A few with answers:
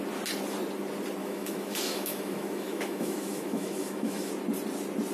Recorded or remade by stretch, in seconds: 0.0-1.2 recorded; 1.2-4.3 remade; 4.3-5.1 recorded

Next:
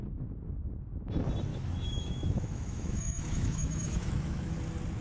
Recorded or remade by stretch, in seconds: 0.0-1.5 recorded; 1.5-4.5 remade; 4.5-5.0 recorded

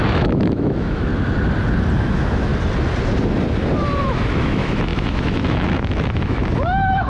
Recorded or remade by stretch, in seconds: 0.0-1.1 remade; 1.1-2.0 recorded; 2.0-2.5 remade; 2.5-4.0 recorded; 4.0-7.1 remade

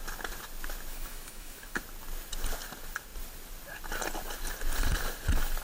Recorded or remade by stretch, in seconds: 0.0-0.9 recorded; 0.9-1.8 remade; 1.8-5.6 recorded